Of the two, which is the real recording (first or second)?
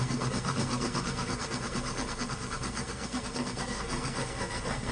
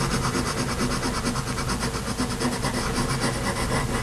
second